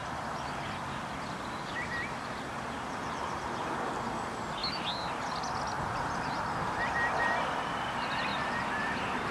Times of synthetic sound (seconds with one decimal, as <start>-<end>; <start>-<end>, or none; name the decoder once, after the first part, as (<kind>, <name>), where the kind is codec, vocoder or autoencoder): 0.0-3.7 (vocoder, BigVGAN v2); 8.3-8.9